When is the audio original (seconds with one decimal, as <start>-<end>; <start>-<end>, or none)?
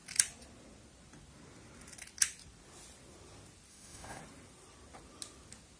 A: 0.0-3.7; 4.2-5.8